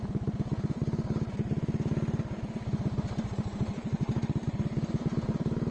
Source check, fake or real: real